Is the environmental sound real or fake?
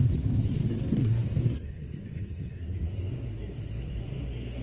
fake